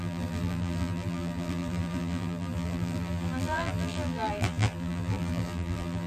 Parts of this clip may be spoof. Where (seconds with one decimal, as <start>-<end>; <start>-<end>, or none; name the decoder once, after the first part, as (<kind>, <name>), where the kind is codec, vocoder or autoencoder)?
0.0-6.1 (vocoder, BigVGAN v2)